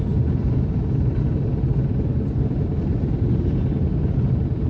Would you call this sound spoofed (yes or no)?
no